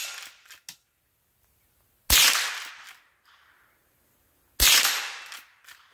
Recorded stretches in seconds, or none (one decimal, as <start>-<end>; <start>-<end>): 0.0-5.9